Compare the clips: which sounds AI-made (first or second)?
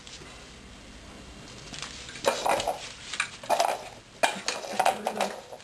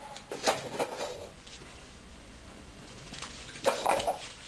second